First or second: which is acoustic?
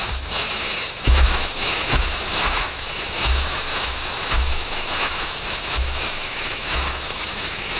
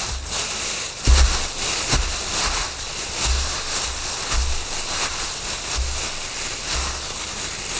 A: second